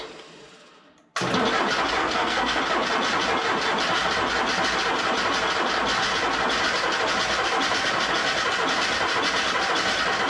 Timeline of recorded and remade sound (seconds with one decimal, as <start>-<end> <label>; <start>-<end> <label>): 0.0-2.0 recorded; 2.0-2.6 remade; 2.6-10.3 recorded